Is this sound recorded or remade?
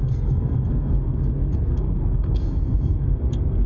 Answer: remade